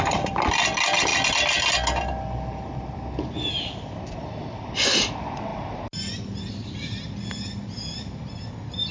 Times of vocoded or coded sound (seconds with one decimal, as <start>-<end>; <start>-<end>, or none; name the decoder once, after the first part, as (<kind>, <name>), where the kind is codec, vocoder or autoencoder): none